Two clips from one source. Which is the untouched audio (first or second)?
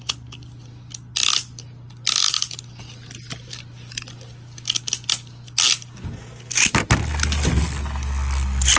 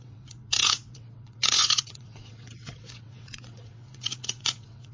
first